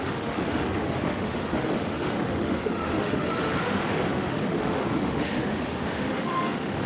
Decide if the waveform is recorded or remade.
remade